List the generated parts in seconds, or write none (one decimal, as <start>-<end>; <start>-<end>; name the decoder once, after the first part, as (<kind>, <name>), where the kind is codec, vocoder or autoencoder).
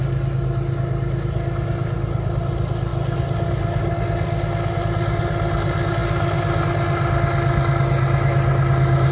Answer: none